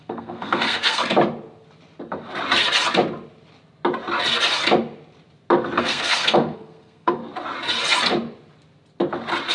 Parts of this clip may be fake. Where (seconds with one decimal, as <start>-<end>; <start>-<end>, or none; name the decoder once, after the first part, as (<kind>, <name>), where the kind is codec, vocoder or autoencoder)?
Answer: 0.0-1.0 (codec, SNAC); 5.8-7.2